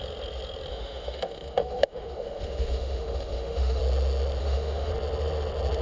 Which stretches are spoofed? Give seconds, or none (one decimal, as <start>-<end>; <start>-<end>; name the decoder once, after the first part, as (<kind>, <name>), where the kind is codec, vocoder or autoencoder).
0.7-3.8 (autoencoder, DAC-VAE); 4.4-4.9